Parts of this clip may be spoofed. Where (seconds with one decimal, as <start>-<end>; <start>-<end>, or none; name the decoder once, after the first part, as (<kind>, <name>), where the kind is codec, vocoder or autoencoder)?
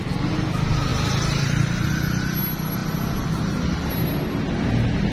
none